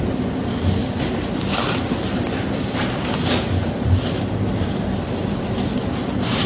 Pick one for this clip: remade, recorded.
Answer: recorded